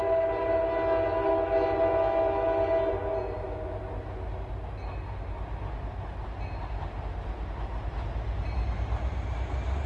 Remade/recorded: recorded